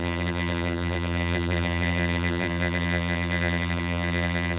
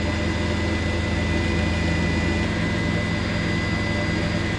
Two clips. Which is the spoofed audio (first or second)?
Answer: first